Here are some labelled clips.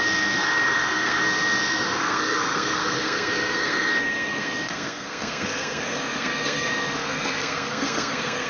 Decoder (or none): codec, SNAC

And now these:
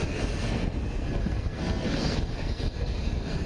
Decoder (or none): codec, SNAC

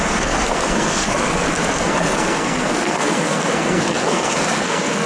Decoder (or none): codec, SNAC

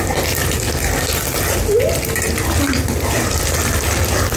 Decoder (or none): none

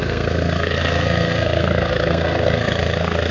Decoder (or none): codec, SNAC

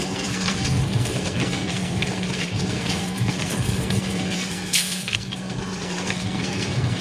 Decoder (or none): codec, SNAC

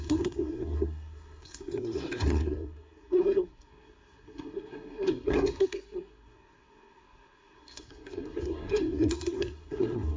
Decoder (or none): codec, SNAC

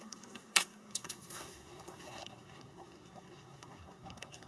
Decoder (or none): codec, SNAC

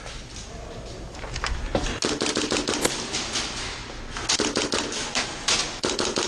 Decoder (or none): none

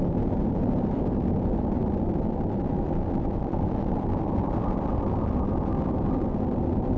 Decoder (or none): none